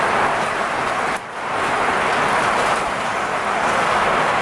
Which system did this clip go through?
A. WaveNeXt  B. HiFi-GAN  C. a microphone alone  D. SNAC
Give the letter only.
C